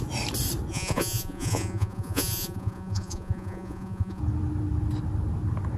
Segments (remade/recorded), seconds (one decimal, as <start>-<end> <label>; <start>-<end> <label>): 0.0-0.7 recorded; 0.7-4.2 remade; 4.2-5.8 recorded